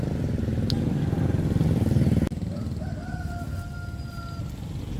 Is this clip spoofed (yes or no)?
no